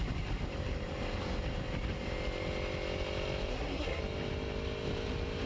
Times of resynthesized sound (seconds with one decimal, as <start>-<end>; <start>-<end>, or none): 3.5-4.0